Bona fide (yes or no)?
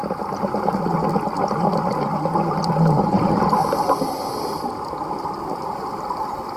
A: yes